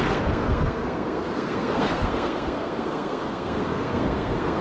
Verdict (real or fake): fake